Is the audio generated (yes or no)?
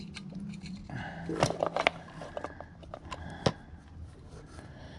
no